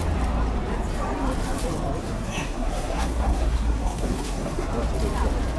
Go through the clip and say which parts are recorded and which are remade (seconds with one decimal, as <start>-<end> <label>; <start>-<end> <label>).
0.0-2.0 recorded; 2.0-4.7 remade; 4.7-5.6 recorded

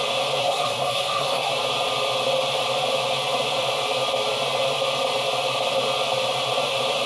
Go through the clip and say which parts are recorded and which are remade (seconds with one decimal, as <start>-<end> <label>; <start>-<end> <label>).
0.0-0.4 recorded; 0.4-1.5 remade; 1.5-7.1 recorded